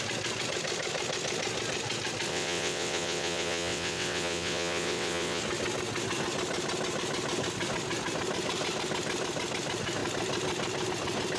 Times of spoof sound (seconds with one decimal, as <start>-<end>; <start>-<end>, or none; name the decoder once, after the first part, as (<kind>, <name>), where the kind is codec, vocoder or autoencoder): 2.3-5.4 (vocoder, WaveNeXt)